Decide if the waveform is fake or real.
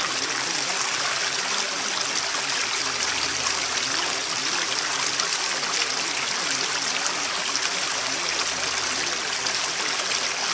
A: real